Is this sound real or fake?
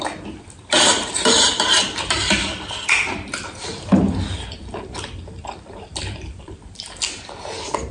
fake